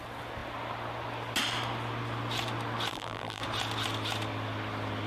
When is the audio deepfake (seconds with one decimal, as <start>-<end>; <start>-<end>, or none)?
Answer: 2.9-3.4